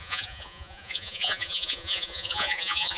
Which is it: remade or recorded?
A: remade